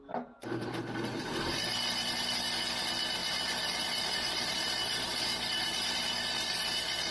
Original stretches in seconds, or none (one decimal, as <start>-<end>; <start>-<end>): 0.0-7.1